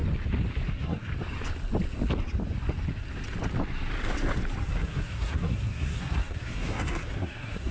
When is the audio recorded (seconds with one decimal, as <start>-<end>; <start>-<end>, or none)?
0.0-0.7; 1.1-4.7